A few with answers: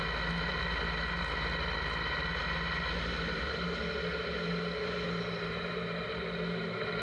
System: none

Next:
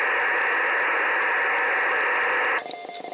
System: none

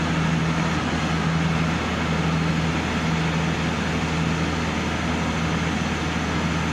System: none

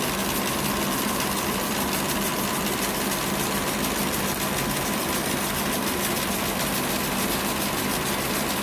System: none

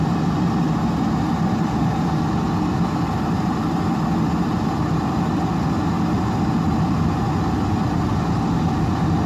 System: none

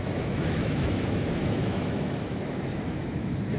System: autoencoder, DAC-VAE